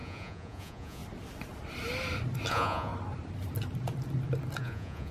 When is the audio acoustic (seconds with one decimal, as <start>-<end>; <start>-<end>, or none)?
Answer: 1.0-2.5; 2.9-4.6